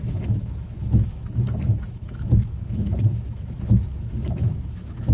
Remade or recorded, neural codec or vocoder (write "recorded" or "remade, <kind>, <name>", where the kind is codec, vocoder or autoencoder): remade, autoencoder, DAC-VAE